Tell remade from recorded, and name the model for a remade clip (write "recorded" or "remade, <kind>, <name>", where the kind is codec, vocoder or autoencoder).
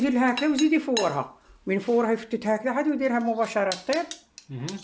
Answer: recorded